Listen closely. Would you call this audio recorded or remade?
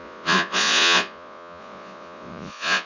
remade